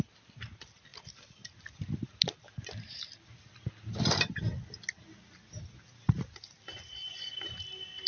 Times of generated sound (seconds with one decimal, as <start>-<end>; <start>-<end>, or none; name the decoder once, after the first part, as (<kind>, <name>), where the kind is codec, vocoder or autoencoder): none